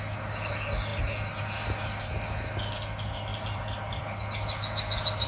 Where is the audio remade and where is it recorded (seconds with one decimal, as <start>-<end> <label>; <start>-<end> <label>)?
0.0-3.3 recorded; 3.3-4.0 remade; 4.0-5.3 recorded